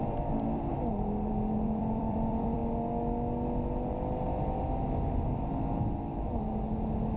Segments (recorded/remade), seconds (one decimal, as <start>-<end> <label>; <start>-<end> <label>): 0.0-0.7 remade; 0.7-1.3 recorded; 1.3-2.6 remade; 2.6-7.2 recorded